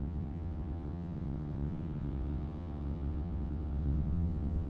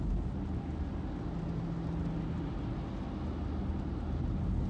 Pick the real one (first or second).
second